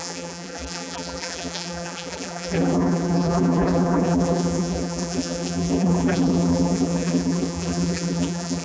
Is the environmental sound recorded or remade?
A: remade